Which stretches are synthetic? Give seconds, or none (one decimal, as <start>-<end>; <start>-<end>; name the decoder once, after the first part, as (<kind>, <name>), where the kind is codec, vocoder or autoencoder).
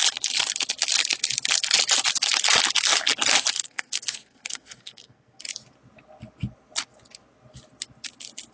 3.5-5.4 (codec, SNAC)